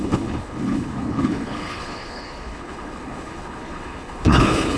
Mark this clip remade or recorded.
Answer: remade